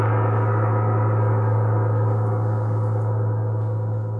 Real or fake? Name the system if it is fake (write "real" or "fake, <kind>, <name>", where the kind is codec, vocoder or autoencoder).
fake, codec, DAC